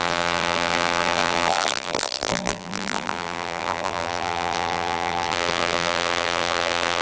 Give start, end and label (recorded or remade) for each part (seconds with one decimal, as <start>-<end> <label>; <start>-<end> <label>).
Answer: 0.0-7.0 remade